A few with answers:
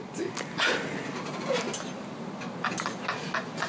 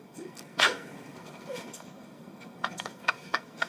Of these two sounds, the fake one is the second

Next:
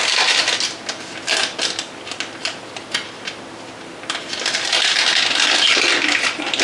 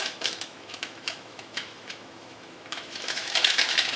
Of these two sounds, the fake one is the second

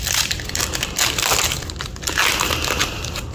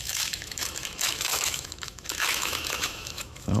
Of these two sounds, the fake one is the second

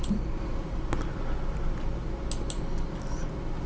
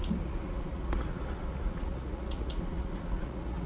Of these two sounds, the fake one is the second